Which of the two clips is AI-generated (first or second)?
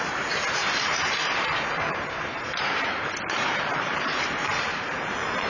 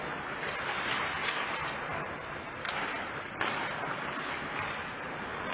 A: first